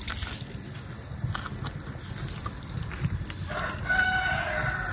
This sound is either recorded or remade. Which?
recorded